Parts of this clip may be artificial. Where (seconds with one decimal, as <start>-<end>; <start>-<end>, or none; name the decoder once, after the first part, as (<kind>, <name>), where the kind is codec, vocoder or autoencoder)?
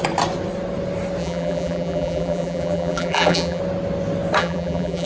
1.2-3.6 (vocoder, BigVGAN v2); 4.4-5.1